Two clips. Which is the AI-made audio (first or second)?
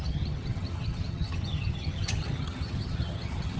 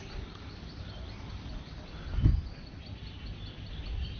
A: first